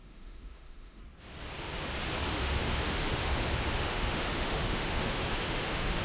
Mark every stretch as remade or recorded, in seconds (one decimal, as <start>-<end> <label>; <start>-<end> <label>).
0.0-1.0 remade; 1.0-2.3 recorded; 2.3-6.0 remade